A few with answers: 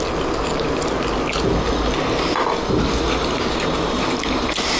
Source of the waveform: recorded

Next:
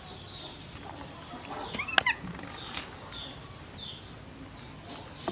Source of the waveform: recorded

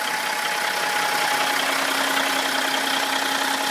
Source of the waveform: recorded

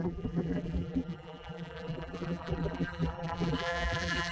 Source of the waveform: remade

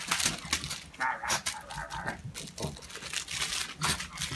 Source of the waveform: recorded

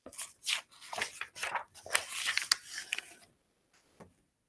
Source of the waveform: recorded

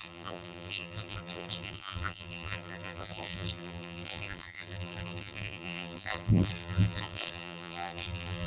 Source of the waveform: remade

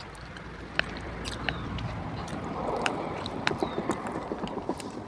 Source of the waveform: remade